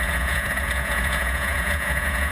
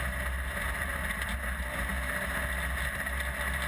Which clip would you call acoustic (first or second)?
second